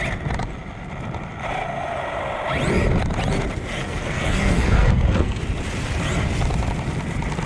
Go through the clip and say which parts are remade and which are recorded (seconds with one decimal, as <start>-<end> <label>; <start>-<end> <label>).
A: 0.0-3.8 recorded; 3.8-5.4 remade; 5.4-7.5 recorded